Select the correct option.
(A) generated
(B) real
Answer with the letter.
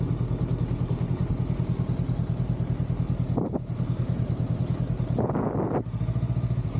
B